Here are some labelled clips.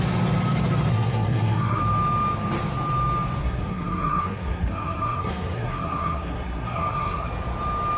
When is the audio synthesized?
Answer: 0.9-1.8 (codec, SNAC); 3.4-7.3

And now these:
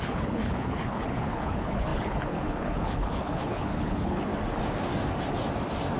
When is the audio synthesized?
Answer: 0.0-4.3 (codec, HILCodec)

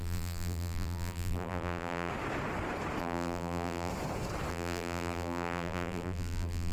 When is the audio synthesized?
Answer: 0.0-2.1 (vocoder, BigVGAN v2); 3.0-3.9; 4.5-6.7

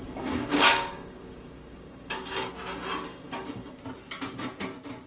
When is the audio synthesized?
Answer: 0.0-2.5 (codec, DAC); 3.1-3.7

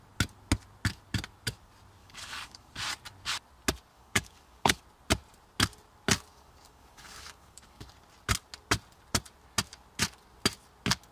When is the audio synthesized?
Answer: 2.0-2.7 (codec, DAC); 3.9-4.8; 6.3-7.9

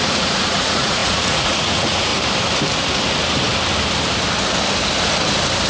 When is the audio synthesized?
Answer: 0.0-2.1 (vocoder, Vocos)

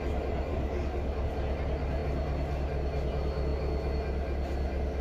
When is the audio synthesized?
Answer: 0.5-1.3 (codec, DAC)

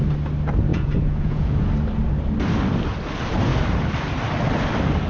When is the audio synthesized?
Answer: 0.7-1.7 (vocoder, Vocos)